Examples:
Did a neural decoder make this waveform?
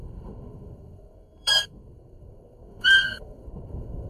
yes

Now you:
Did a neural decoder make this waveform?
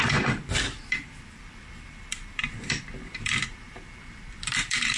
yes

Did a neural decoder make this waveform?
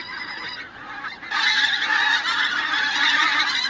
yes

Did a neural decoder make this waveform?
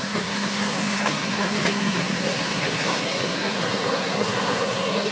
yes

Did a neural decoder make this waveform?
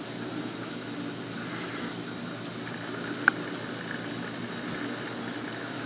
no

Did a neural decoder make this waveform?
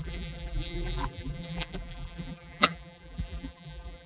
yes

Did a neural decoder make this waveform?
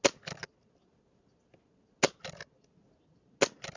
no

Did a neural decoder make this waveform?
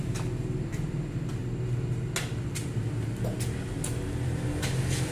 no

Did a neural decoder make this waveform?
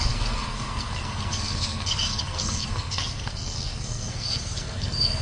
yes